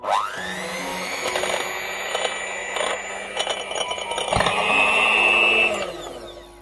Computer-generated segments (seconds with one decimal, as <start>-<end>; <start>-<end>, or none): 0.9-1.4